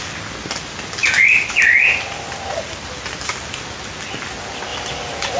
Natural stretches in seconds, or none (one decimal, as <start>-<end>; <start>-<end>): 0.0-5.4